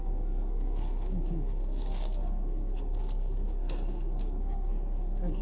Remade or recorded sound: remade